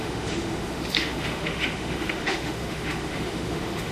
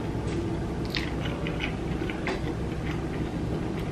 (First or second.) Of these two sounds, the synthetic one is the first